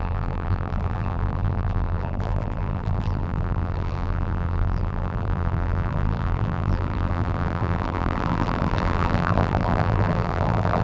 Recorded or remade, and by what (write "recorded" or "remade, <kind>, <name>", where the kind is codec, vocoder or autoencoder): remade, vocoder, BigVGAN v2